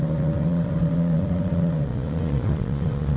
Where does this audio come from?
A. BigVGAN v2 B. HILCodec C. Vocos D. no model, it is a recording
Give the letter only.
C